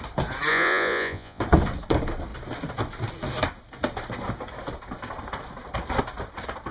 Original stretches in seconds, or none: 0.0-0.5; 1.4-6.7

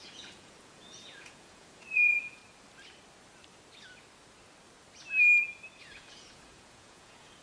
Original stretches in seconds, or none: 2.4-5.8

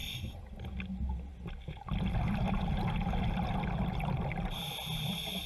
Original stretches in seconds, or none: 0.0-5.5